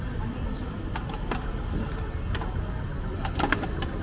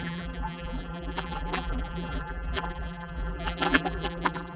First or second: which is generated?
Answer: second